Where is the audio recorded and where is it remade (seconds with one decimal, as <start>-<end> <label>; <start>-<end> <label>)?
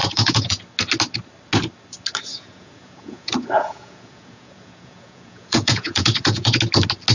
0.0-0.6 remade; 0.6-2.3 recorded; 2.3-6.6 remade; 6.6-7.1 recorded